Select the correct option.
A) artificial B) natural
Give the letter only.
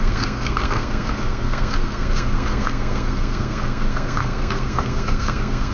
A